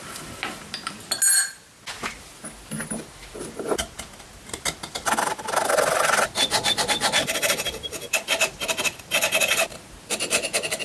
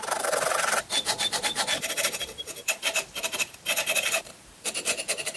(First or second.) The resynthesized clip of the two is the second